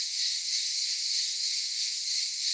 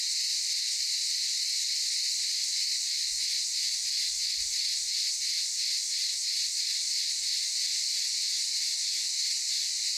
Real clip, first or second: second